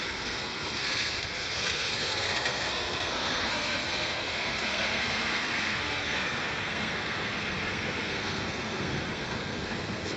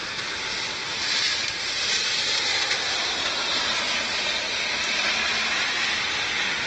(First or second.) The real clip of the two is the second